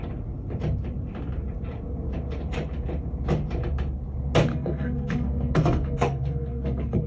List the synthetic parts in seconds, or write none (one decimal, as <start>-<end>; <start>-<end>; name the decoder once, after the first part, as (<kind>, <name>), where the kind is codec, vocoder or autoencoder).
4.5-7.1 (codec, SNAC)

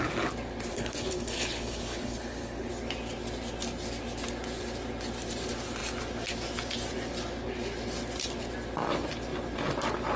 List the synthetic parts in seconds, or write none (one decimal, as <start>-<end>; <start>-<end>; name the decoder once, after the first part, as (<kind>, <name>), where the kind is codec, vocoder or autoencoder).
0.7-2.7 (codec, HILCodec)

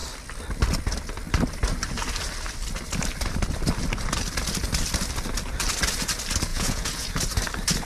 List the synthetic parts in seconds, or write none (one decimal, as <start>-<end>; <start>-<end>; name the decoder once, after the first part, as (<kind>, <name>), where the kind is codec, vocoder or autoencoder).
6.5-7.1 (vocoder, Vocos)

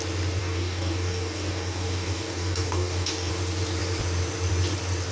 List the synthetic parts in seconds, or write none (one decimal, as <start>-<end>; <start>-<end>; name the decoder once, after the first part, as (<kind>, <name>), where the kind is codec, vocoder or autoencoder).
0.4-3.3 (codec, DAC)